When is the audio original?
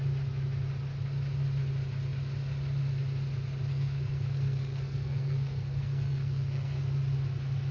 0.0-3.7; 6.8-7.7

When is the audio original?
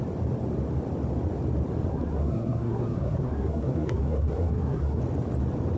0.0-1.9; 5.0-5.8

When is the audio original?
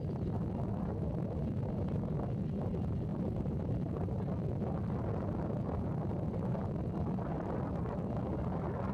0.0-3.1; 4.1-6.1; 6.6-8.9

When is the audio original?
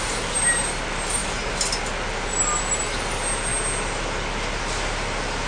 0.0-5.5